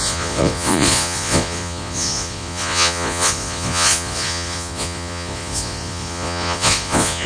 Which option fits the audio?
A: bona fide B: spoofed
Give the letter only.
B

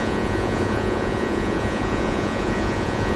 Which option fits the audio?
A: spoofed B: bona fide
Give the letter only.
A